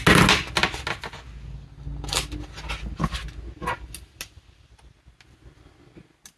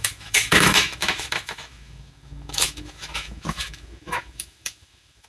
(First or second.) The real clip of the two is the first